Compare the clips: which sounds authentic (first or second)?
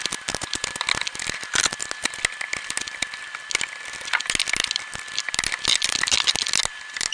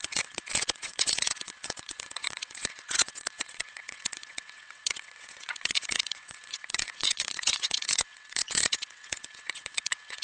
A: first